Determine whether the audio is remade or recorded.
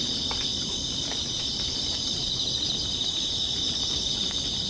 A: remade